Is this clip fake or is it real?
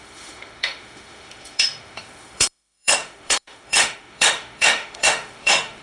fake